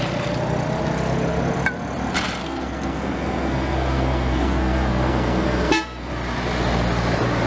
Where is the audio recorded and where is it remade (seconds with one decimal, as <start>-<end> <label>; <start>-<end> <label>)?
0.0-2.4 recorded; 2.4-6.1 remade; 6.1-7.5 recorded